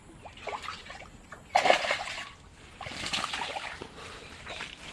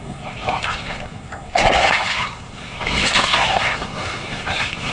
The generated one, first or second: second